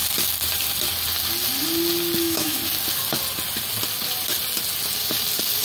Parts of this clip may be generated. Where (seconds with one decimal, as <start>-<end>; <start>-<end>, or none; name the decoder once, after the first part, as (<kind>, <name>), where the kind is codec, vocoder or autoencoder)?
2.2-2.6 (autoencoder, DAC-VAE)